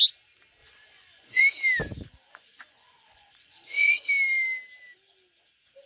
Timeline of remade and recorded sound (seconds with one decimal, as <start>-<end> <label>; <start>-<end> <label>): 0.0-0.6 recorded; 0.6-1.4 remade; 1.4-2.3 recorded; 2.3-4.1 remade; 4.1-5.9 recorded